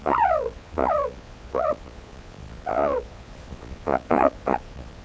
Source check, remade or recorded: remade